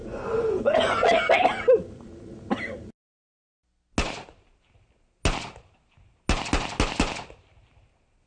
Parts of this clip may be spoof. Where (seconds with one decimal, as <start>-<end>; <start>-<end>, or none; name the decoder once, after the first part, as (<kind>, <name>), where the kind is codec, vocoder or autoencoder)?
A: 0.0-1.2 (vocoder, Vocos)